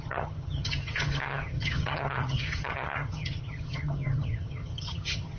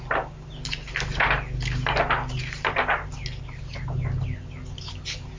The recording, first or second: second